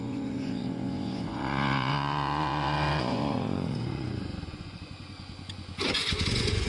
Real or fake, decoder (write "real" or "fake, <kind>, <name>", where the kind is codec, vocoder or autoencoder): fake, vocoder, Vocos